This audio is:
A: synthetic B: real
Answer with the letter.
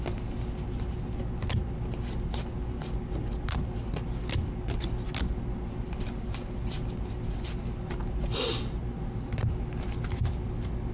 B